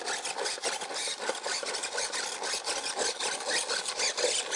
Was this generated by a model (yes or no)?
no